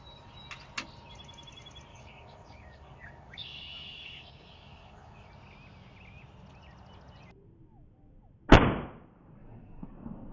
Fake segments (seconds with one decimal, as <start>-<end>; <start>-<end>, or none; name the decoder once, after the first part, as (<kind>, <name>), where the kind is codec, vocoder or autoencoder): 1.9-5.3 (codec, DAC); 9.4-9.9